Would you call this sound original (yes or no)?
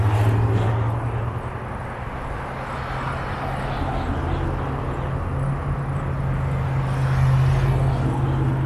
yes